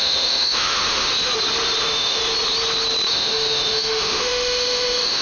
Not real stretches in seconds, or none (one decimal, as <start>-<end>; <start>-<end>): 0.0-1.1; 1.8-2.2; 3.1-5.2